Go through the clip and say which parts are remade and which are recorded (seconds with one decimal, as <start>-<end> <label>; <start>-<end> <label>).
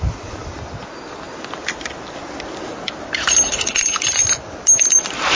0.0-5.3 recorded